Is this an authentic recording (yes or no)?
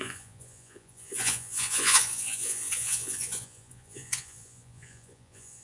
no